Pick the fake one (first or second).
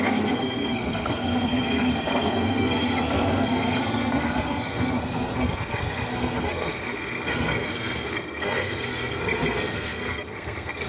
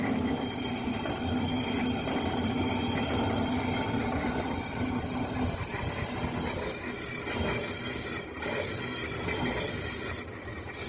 first